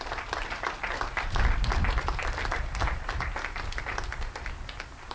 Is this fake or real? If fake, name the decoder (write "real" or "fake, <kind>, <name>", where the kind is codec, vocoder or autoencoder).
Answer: real